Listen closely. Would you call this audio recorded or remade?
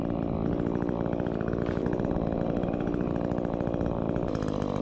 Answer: recorded